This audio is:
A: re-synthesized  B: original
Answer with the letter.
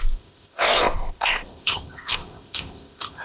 A